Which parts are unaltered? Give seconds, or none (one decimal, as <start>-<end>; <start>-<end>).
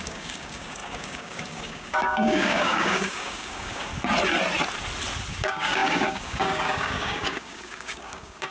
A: 3.9-5.3